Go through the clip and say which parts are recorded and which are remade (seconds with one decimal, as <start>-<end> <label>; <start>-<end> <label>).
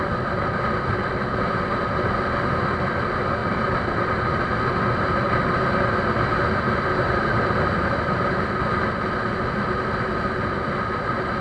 0.0-3.4 recorded; 3.4-4.1 remade; 4.1-11.4 recorded